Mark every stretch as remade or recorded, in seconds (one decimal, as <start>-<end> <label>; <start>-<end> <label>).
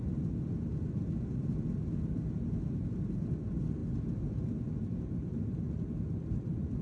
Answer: 0.0-6.8 recorded